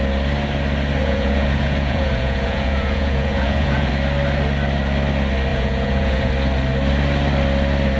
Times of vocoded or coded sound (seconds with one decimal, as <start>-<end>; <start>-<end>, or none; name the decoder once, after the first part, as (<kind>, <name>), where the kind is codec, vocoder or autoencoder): 1.0-3.9 (vocoder, Vocos); 5.5-6.3